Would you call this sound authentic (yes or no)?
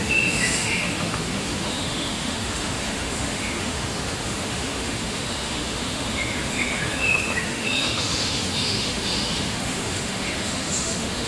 no